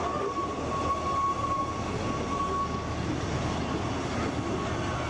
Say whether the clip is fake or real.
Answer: real